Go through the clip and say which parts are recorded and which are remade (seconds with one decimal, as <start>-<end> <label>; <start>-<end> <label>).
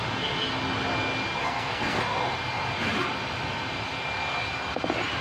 0.0-1.4 recorded; 1.4-2.0 remade; 2.0-5.2 recorded